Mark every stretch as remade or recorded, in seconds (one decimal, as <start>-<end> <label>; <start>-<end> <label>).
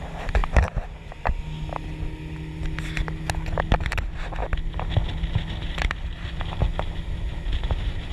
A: 0.0-8.1 recorded